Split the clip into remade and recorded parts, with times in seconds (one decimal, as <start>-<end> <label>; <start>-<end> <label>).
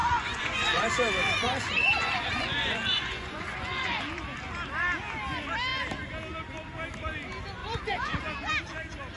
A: 0.0-4.0 remade; 4.0-7.6 recorded; 7.6-8.2 remade; 8.2-9.2 recorded